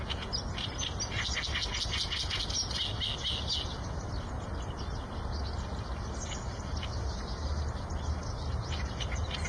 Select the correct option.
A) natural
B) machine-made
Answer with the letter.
A